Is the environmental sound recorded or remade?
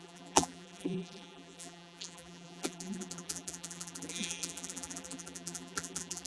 remade